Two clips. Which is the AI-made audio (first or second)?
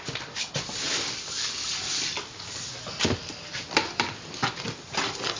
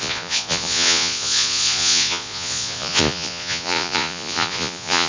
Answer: second